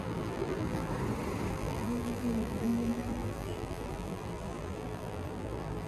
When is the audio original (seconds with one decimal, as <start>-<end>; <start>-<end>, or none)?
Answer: 0.9-1.5